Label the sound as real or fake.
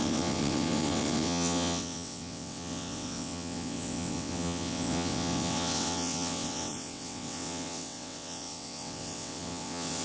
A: fake